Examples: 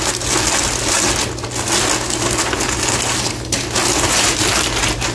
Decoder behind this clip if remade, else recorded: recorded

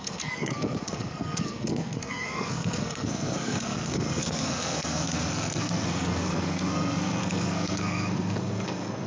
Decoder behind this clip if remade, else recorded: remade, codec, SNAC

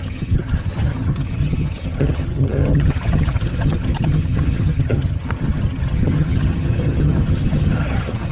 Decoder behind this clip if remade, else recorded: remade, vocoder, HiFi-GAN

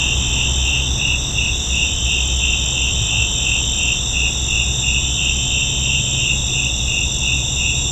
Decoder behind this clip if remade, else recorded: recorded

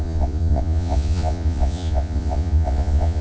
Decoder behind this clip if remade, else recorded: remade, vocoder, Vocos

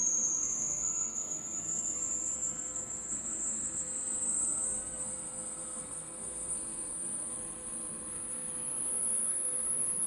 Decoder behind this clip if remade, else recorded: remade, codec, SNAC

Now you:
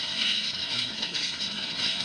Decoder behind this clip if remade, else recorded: remade, codec, SNAC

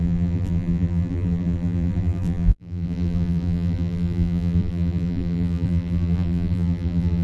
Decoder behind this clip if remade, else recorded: remade, vocoder, BigVGAN v2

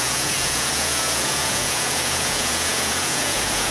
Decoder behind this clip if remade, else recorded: remade, vocoder, Vocos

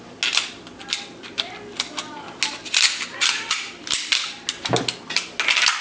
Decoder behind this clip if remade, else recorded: recorded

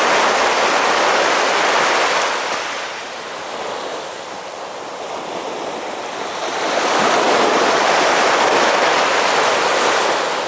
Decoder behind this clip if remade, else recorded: recorded